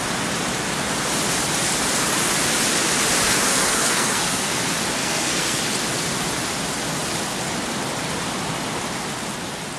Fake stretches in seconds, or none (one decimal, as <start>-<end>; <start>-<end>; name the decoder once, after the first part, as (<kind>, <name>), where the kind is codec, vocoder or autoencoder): 3.5-4.6 (codec, SNAC); 5.0-5.6